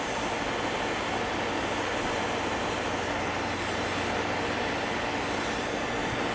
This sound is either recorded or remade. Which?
recorded